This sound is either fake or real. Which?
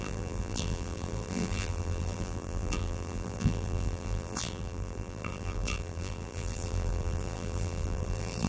fake